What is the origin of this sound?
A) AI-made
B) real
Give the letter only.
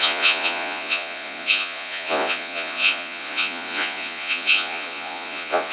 A